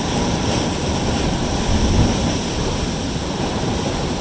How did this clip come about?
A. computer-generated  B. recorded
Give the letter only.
B